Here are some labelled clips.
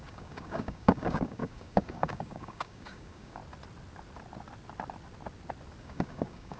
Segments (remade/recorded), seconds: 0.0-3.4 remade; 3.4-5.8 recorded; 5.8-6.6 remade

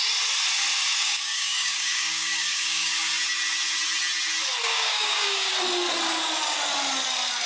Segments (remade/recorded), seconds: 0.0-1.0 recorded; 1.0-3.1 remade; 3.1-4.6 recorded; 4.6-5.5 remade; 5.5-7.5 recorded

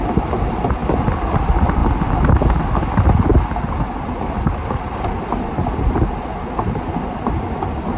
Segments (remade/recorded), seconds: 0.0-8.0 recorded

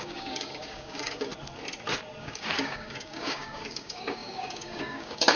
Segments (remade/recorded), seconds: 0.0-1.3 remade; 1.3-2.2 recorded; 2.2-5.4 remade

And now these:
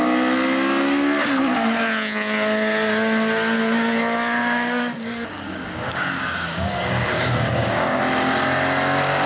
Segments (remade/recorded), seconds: 0.0-4.4 recorded; 4.4-8.0 remade; 8.0-9.3 recorded